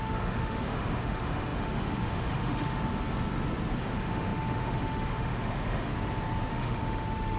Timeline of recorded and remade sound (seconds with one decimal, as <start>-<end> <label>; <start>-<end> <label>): 0.0-2.8 remade; 2.8-3.8 recorded; 3.8-5.9 remade; 5.9-6.5 recorded; 6.5-7.4 remade